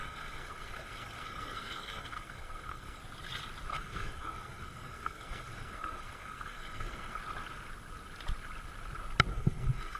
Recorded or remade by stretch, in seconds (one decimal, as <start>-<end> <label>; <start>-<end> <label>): 0.0-3.0 remade; 3.0-3.7 recorded; 3.7-7.2 remade; 7.2-9.3 recorded; 9.3-10.0 remade